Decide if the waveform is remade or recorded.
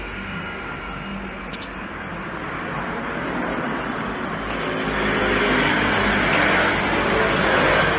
recorded